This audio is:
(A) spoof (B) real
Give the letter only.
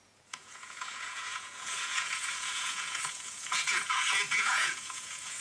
A